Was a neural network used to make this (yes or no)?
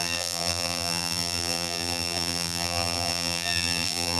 yes